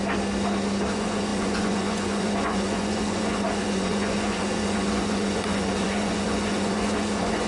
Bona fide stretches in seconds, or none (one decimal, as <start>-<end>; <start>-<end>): 0.0-0.9